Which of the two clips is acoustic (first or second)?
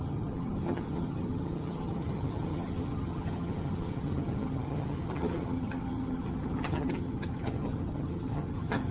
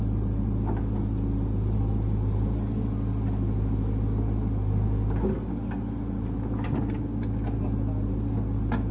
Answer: second